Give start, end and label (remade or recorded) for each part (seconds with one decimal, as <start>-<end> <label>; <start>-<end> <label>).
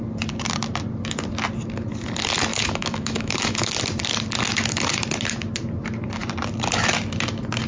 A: 0.0-2.5 recorded; 2.5-3.7 remade; 3.7-7.7 recorded